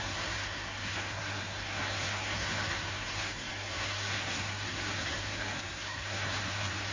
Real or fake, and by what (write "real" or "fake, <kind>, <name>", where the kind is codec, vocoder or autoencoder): fake, codec, SNAC